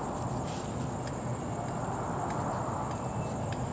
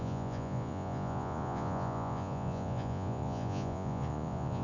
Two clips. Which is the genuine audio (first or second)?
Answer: first